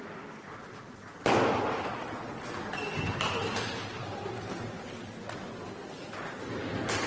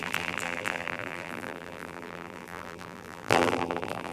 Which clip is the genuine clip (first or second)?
first